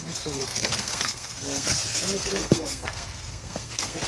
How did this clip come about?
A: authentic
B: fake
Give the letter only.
B